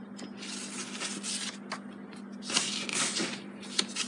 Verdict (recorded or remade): recorded